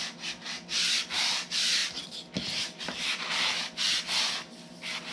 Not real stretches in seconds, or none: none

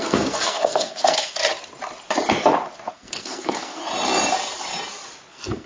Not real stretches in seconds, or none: 0.0-1.4; 2.9-3.8; 5.3-5.7

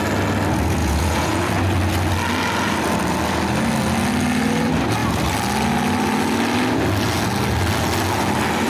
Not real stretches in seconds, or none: 0.8-1.5

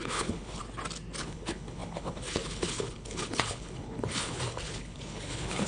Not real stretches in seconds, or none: 0.0-0.6; 1.2-5.7

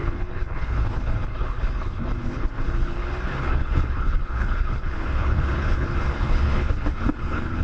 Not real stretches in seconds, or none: 0.0-7.6

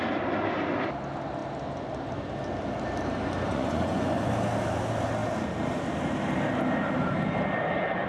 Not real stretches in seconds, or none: 3.5-4.3